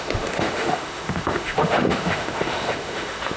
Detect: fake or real fake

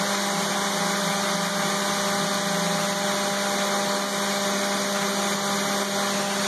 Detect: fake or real real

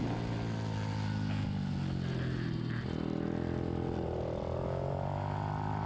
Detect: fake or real real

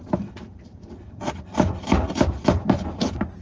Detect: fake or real real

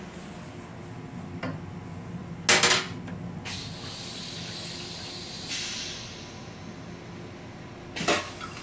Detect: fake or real real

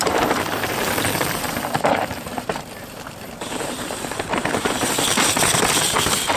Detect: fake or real fake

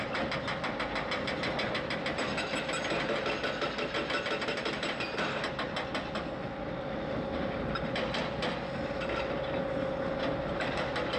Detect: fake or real real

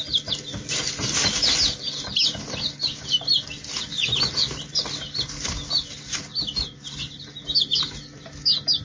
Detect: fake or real real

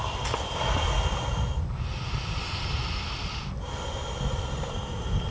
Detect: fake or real real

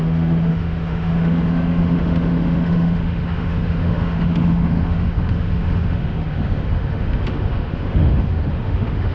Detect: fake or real fake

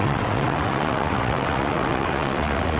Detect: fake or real fake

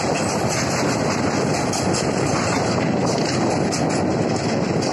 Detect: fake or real real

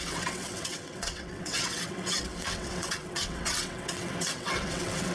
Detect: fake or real fake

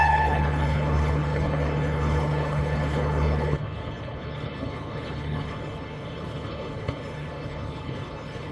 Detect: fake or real fake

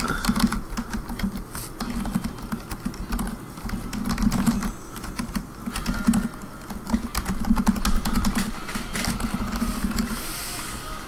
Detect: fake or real real